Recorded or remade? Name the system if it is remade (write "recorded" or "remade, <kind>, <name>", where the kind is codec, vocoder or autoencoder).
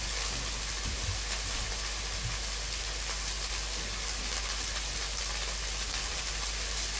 recorded